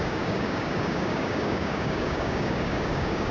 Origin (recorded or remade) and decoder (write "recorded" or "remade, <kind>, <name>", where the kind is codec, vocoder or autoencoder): remade, codec, DAC